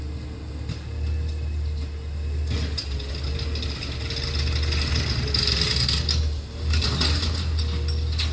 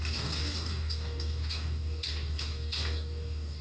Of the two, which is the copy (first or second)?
second